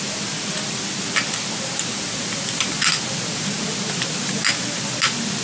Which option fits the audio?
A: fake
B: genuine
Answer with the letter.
B